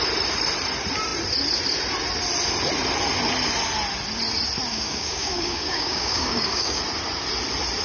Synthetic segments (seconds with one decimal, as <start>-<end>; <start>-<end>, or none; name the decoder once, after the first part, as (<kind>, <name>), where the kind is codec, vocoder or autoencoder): 4.7-6.8 (codec, DAC)